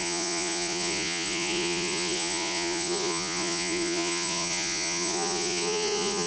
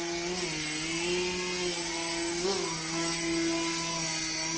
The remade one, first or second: first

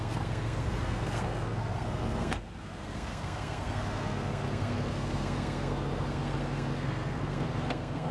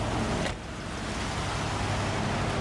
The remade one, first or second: first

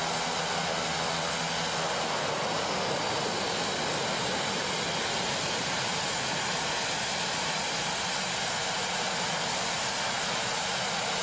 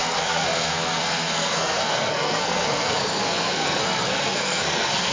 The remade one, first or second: second